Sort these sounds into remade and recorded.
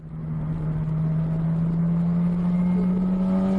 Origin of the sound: recorded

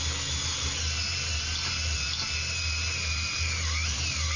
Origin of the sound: recorded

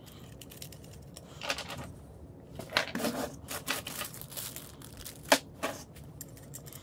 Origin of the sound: recorded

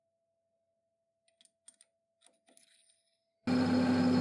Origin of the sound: recorded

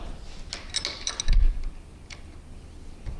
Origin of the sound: recorded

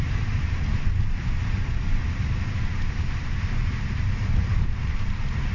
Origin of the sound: remade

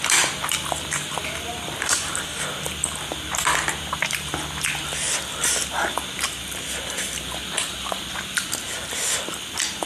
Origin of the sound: remade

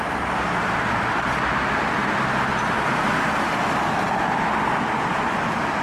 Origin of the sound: recorded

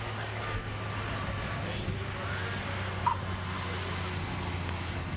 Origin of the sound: recorded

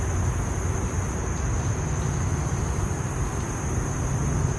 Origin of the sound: recorded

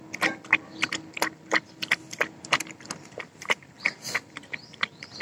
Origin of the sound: recorded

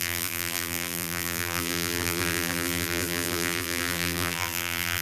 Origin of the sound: remade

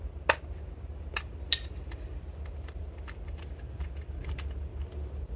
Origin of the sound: recorded